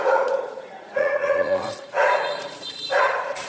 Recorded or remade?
remade